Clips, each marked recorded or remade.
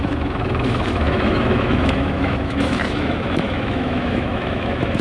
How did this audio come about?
remade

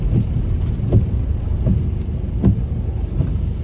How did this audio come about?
recorded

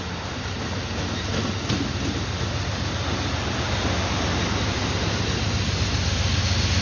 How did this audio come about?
recorded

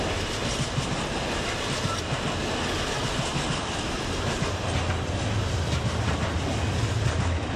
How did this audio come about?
recorded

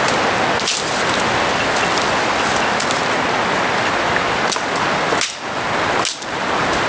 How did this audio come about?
recorded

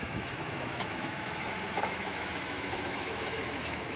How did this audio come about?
remade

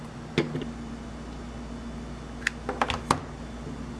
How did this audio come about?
recorded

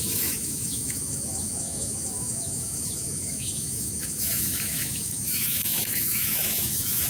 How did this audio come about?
remade